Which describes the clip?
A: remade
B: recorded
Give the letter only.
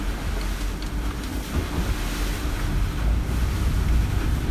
B